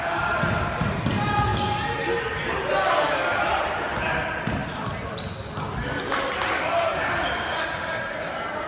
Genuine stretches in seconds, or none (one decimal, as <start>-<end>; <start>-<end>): 0.0-8.7